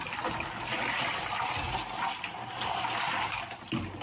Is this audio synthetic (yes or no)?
no